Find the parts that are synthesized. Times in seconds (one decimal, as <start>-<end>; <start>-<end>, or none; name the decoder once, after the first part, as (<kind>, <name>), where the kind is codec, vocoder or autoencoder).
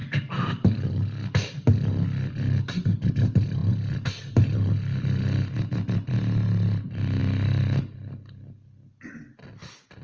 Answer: 3.6-4.1 (vocoder, BigVGAN v2)